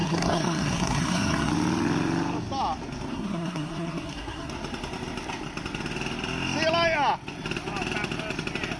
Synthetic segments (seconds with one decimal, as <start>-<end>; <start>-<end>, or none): 0.0-1.5; 3.1-4.5